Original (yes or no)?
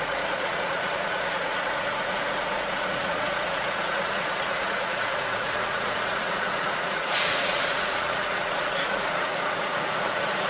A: no